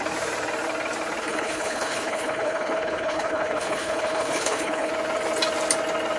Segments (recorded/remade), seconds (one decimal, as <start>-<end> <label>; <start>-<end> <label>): 0.0-1.2 recorded; 1.2-4.9 remade; 4.9-6.2 recorded